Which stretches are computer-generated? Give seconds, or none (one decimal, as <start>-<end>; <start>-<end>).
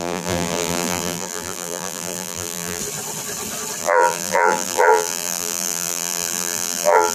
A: 0.0-2.8; 3.8-7.1